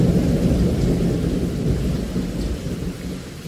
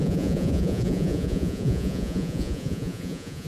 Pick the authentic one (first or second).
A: first